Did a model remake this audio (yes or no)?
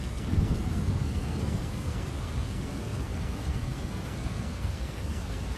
yes